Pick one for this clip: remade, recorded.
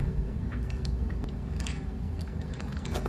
remade